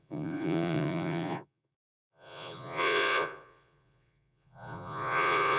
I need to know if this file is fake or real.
fake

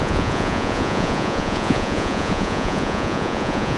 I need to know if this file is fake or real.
fake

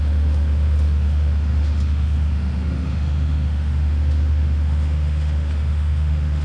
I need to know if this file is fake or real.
fake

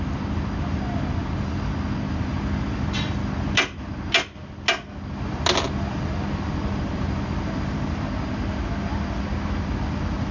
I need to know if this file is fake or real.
real